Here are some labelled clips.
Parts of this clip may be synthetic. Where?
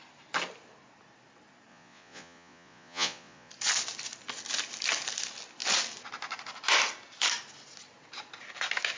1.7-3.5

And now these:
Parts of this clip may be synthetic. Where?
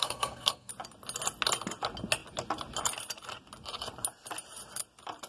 0.0-0.7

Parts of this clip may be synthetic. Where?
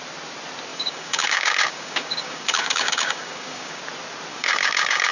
0.7-3.8; 4.3-5.1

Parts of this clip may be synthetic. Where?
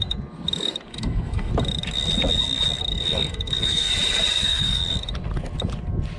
0.9-1.5; 2.9-3.9; 4.4-4.9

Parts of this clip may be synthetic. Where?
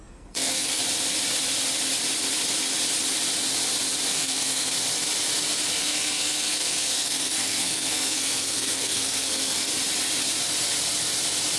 0.0-0.8; 4.1-4.7; 5.7-9.7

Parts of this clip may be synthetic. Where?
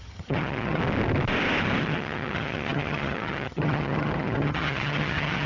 0.0-0.8; 1.8-5.5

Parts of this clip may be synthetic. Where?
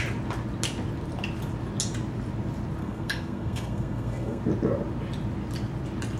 2.8-4.4